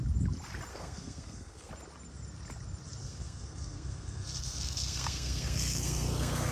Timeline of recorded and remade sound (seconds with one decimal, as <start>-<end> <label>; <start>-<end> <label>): 0.0-0.7 recorded; 0.7-1.7 remade; 1.7-3.0 recorded; 3.0-6.5 remade